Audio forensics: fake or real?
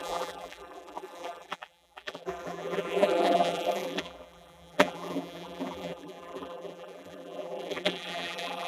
fake